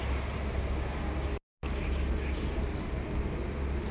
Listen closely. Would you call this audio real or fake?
real